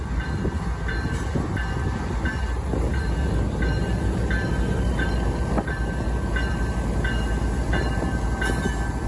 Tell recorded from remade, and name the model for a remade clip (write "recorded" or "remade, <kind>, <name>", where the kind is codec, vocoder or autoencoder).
recorded